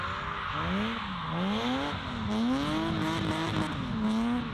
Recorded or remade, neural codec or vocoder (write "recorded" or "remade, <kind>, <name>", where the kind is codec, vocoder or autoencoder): recorded